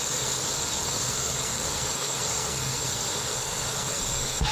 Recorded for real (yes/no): no